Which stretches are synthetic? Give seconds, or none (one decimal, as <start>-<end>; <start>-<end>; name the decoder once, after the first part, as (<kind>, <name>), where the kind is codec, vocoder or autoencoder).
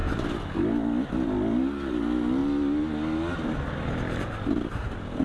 none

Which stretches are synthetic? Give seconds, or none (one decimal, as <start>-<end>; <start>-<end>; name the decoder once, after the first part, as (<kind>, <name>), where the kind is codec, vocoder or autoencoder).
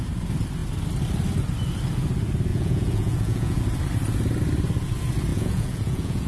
2.5-3.6 (vocoder, Vocos); 5.3-6.3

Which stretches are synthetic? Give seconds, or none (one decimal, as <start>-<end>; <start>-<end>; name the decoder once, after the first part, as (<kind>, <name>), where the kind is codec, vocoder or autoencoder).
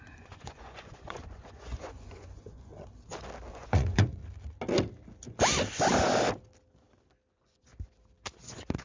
0.0-2.7 (vocoder, Vocos); 3.5-4.2; 7.3-7.7; 8.4-8.8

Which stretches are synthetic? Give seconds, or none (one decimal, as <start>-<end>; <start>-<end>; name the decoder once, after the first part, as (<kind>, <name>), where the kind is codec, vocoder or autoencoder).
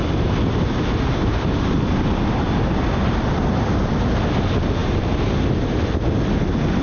0.0-4.1 (vocoder, BigVGAN v2); 4.8-5.9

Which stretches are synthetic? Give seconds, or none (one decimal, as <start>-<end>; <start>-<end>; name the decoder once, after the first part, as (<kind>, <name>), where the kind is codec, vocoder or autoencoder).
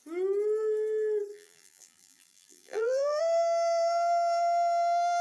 1.3-3.2 (vocoder, BigVGAN v2)